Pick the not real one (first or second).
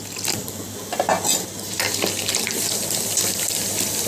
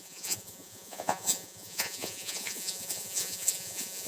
second